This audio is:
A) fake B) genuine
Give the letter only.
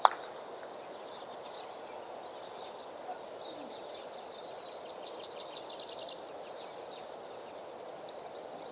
B